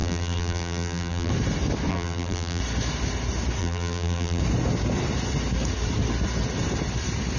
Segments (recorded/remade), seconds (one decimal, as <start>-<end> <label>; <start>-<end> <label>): 0.0-1.3 remade; 1.3-1.9 recorded; 1.9-2.6 remade; 2.6-3.6 recorded; 3.6-4.4 remade; 4.4-7.4 recorded